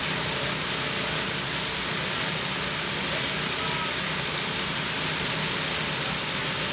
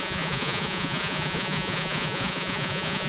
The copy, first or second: second